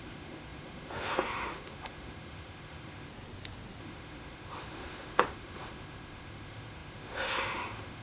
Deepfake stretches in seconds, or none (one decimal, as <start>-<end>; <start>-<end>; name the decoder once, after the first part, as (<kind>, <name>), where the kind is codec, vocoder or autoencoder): 0.0-3.1 (autoencoder, DAC-VAE); 3.8-8.0